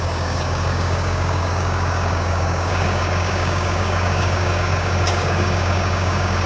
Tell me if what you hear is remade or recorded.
remade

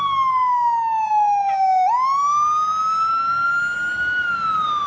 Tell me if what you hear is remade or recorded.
recorded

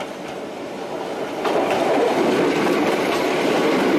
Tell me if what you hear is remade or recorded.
recorded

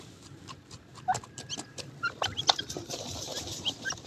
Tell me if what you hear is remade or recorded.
remade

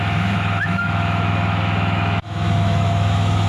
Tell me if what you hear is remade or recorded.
remade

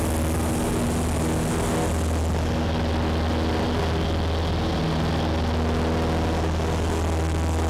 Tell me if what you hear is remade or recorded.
recorded